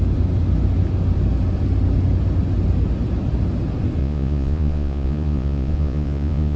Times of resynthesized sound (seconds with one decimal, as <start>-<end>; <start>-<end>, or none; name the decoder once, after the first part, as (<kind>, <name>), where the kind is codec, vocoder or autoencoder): 4.0-6.6 (vocoder, Vocos)